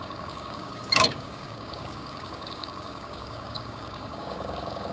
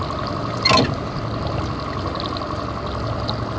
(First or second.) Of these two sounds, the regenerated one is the first